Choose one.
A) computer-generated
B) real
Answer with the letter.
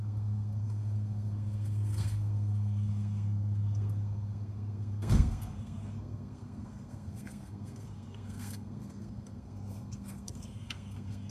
A